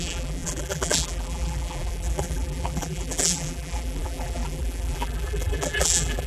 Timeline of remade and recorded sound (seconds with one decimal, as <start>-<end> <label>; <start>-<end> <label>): 0.0-6.3 remade